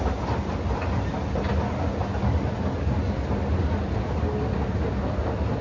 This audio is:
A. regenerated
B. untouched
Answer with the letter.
B